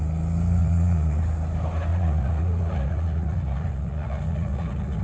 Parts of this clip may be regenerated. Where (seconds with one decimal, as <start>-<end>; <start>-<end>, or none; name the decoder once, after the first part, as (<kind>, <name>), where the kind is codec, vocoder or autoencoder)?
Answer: 0.6-1.2 (vocoder, Vocos); 1.9-5.0